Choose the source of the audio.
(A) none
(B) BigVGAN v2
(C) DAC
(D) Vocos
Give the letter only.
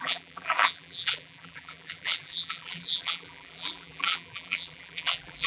B